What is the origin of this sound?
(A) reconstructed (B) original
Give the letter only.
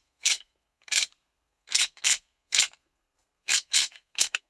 A